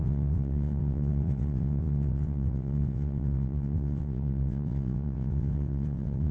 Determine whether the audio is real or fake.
fake